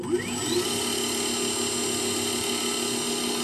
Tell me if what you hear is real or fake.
real